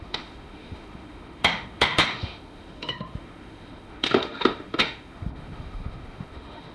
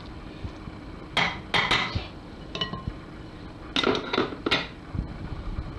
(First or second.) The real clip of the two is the second